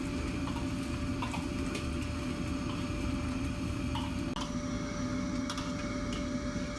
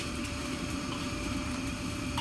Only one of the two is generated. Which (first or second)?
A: second